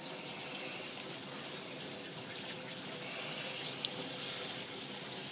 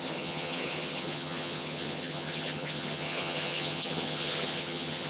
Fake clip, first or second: second